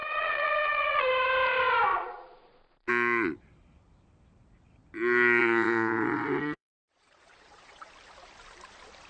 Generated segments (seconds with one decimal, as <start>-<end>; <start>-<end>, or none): 0.0-1.1; 1.9-2.9; 5.4-7.9